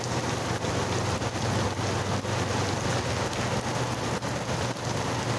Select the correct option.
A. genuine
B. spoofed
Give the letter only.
A